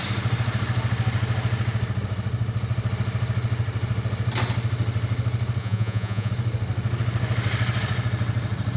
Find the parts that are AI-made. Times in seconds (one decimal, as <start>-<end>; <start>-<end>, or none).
5.6-6.3